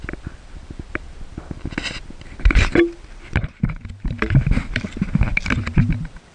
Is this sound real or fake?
fake